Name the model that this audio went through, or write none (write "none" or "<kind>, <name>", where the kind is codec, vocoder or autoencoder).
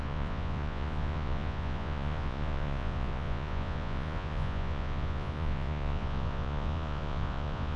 vocoder, Vocos